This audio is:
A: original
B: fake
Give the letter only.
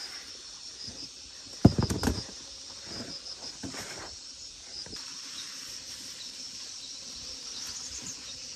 B